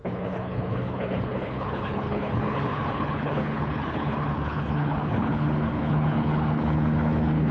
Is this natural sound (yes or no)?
no